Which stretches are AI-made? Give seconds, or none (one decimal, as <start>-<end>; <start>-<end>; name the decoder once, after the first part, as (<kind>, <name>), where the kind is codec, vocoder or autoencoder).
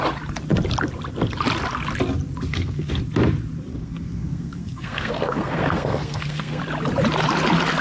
2.5-3.0 (codec, SNAC); 3.7-6.6